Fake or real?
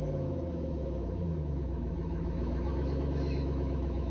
fake